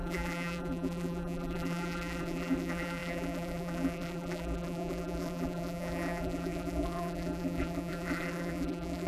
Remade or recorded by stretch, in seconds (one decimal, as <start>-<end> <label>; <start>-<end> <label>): 0.0-9.1 remade